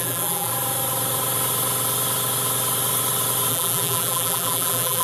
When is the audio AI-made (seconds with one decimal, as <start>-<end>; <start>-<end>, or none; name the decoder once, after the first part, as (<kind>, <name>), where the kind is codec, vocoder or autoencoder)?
0.0-0.5 (vocoder, BigVGAN v2); 3.5-5.0